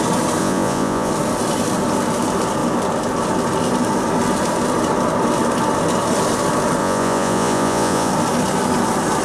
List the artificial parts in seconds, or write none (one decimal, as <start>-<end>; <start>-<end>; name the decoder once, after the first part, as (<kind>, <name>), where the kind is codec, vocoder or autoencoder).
0.4-1.1 (vocoder, Vocos); 6.8-8.1